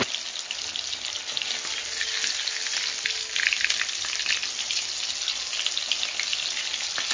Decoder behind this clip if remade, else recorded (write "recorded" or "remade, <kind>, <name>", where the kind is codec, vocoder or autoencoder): recorded